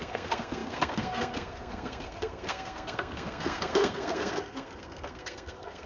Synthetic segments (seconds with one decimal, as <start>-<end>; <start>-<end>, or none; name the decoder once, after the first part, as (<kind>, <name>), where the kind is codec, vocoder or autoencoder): 0.0-5.9 (codec, SNAC)